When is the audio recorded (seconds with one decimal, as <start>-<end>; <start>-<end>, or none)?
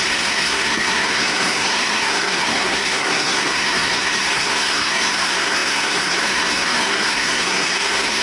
none